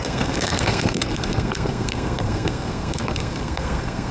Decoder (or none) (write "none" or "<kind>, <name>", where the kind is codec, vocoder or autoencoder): codec, SNAC